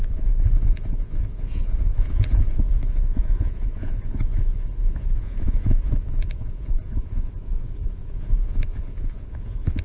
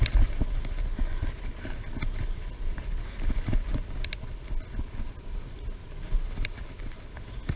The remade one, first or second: first